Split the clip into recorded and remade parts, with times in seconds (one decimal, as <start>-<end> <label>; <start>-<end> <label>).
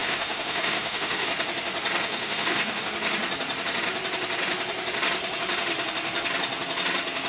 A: 0.0-1.3 remade; 1.3-2.1 recorded; 2.1-2.9 remade; 2.9-7.3 recorded